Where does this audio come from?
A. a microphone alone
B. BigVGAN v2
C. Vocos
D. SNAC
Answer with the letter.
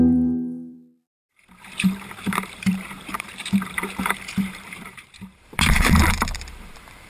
B